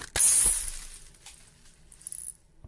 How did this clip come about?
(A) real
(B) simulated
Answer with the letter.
A